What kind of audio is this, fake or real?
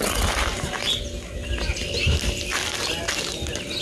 real